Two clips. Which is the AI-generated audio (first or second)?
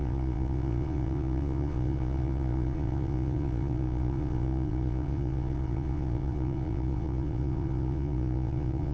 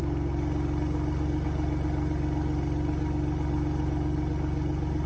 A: first